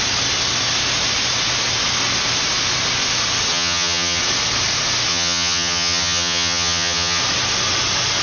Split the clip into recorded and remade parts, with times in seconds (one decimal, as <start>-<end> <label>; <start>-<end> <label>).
0.0-3.5 recorded; 3.5-4.2 remade; 4.2-5.1 recorded; 5.1-7.2 remade; 7.2-8.2 recorded